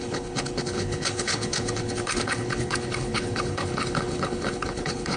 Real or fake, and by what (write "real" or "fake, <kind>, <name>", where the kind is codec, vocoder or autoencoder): fake, codec, HILCodec